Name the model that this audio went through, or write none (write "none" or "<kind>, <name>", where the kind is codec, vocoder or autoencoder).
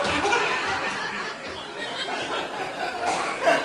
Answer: none